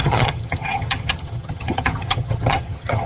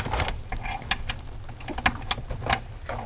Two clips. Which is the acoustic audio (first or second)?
second